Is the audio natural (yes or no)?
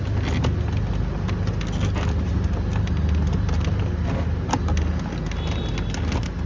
yes